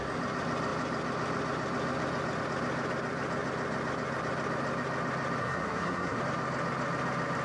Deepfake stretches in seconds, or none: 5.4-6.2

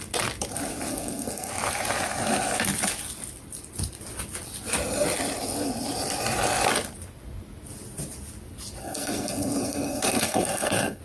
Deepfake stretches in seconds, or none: 0.9-1.5; 8.8-11.0

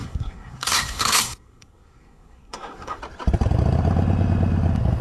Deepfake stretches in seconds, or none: 0.0-3.0

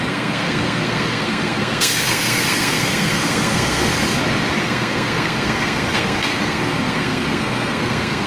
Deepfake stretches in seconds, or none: 0.0-3.9; 4.6-8.3